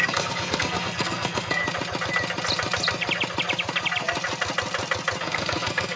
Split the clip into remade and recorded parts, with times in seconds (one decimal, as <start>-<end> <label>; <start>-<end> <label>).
0.0-1.6 remade; 1.6-5.2 recorded; 5.2-6.0 remade